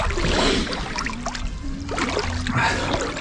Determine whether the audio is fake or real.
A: real